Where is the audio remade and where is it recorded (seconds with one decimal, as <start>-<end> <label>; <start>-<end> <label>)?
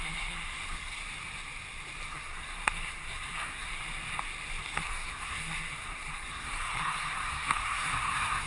0.0-1.0 remade; 1.0-2.1 recorded; 2.1-3.8 remade; 3.8-4.6 recorded; 4.6-8.5 remade